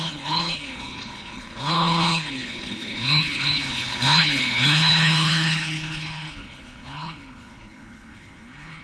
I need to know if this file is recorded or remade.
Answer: remade